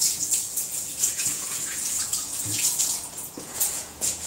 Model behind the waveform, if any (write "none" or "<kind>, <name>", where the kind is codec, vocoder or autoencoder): vocoder, Vocos